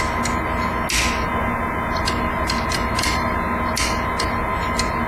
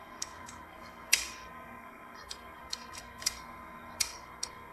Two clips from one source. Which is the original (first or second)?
first